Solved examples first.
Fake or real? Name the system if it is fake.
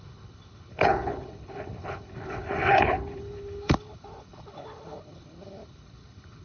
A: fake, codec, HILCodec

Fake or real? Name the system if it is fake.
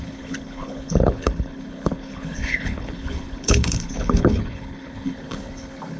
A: fake, codec, HILCodec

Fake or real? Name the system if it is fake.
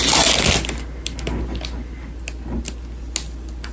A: real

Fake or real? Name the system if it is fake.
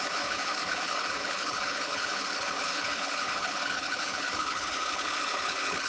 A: fake, codec, HILCodec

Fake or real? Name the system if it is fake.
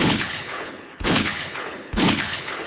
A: fake, codec, HILCodec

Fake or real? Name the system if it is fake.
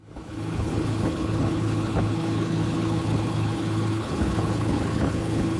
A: fake, codec, HILCodec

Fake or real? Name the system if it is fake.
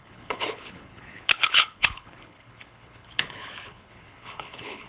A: fake, codec, HILCodec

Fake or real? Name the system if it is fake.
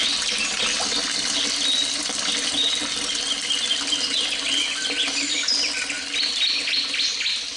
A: real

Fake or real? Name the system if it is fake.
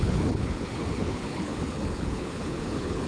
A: fake, codec, HILCodec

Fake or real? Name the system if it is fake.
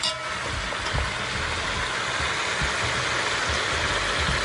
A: real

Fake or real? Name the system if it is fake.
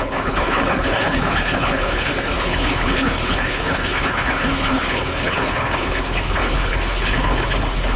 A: fake, codec, HILCodec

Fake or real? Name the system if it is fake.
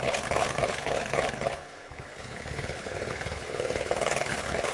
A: fake, codec, HILCodec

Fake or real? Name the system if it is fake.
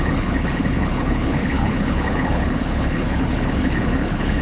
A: fake, codec, HILCodec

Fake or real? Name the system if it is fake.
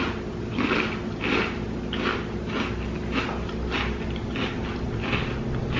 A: real